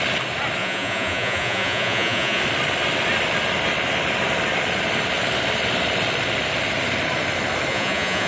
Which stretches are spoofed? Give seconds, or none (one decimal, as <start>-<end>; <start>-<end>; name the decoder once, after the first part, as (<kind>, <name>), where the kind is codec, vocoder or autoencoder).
0.6-2.4 (vocoder, Vocos); 7.7-8.3